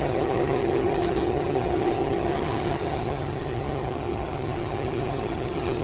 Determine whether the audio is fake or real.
fake